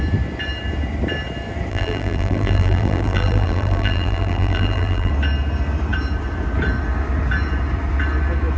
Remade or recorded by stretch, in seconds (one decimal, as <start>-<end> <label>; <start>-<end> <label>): 0.0-1.7 recorded; 1.7-5.1 remade; 5.1-8.6 recorded